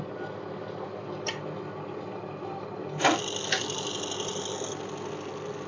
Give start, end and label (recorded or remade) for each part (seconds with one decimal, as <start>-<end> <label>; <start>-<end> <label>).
0.0-5.7 recorded